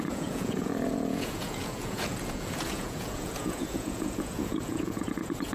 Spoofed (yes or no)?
yes